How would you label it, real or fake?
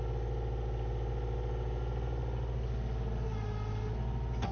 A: real